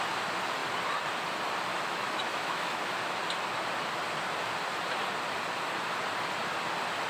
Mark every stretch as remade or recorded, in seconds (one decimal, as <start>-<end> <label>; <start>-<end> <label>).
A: 0.0-1.7 recorded; 1.7-2.8 remade; 2.8-7.1 recorded